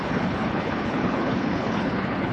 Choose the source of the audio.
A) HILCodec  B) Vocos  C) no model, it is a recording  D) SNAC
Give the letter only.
A